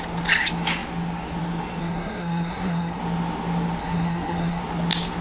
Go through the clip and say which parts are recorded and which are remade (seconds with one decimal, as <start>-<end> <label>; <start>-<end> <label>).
0.0-1.8 recorded; 1.8-3.0 remade; 3.0-3.8 recorded; 3.8-4.6 remade; 4.6-5.2 recorded